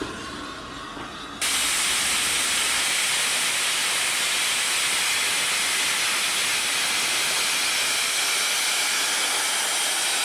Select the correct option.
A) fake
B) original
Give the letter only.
B